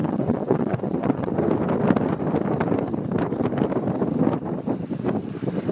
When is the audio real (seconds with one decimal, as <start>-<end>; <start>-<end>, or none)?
1.3-5.7